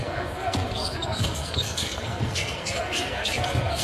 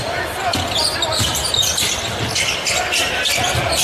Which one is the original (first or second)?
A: second